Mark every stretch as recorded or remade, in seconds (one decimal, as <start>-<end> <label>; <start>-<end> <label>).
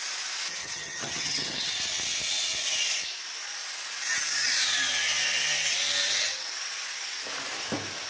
0.0-0.6 recorded; 0.6-1.7 remade; 1.7-8.1 recorded